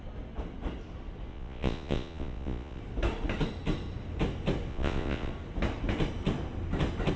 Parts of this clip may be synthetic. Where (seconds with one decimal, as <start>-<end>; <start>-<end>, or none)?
1.3-2.8; 4.7-5.3